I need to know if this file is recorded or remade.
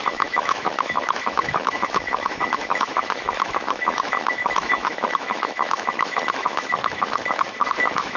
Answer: remade